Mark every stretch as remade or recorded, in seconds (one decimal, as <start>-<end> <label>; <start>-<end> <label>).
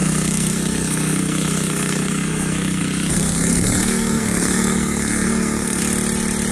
0.0-5.8 remade; 5.8-6.5 recorded